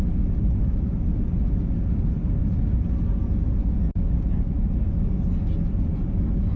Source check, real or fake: real